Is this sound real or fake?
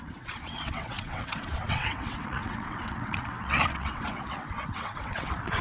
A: fake